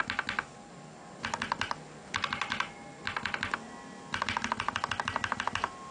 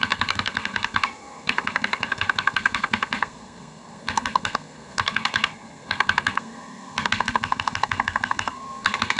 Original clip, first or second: first